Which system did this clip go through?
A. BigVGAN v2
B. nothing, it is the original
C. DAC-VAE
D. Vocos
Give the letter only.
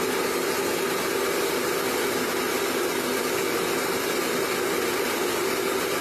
B